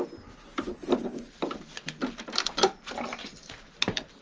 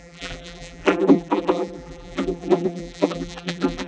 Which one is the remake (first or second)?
second